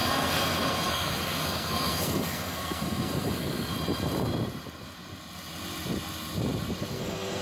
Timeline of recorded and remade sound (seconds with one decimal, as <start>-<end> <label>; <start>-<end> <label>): 0.0-3.7 remade; 3.7-6.9 recorded; 6.9-7.4 remade

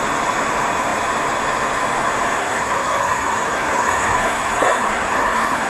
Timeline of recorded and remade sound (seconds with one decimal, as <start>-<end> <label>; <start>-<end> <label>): 0.0-2.4 recorded; 2.4-5.7 remade